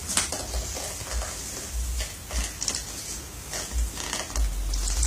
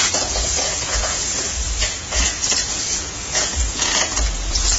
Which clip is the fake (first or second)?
second